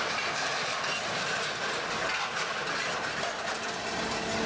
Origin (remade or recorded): recorded